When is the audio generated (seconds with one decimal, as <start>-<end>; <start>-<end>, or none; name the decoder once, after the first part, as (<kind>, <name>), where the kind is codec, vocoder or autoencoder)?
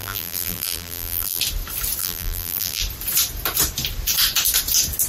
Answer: 0.0-1.4 (vocoder, BigVGAN v2); 2.0-2.8